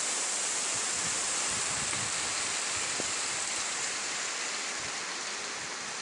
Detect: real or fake fake